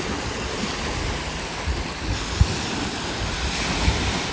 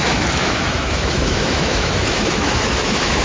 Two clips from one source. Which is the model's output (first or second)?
second